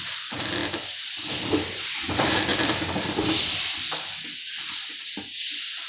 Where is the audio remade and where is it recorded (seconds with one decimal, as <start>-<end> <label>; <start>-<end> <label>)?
0.0-2.5 remade; 2.5-3.4 recorded; 3.4-5.9 remade